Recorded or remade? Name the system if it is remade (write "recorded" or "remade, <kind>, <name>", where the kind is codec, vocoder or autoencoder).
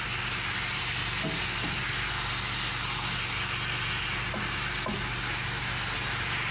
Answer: recorded